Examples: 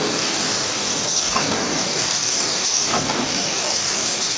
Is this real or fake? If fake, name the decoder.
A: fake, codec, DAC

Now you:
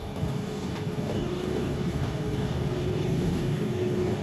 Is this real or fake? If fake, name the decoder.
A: fake, codec, DAC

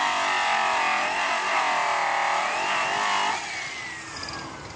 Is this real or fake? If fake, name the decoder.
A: real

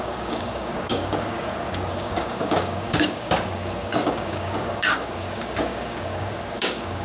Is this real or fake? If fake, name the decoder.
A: fake, codec, DAC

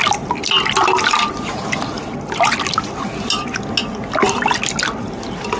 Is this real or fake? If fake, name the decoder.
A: real